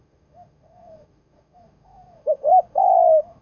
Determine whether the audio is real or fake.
fake